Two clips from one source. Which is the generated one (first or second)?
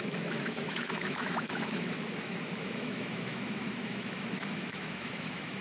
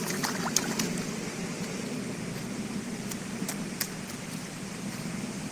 first